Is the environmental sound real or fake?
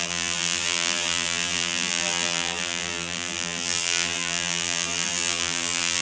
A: fake